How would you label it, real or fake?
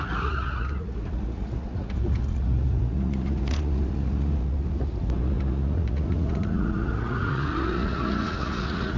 fake